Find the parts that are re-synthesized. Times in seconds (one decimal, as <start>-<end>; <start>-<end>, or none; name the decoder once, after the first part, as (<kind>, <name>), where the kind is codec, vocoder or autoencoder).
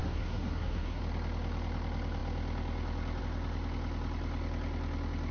0.0-1.0 (codec, SNAC)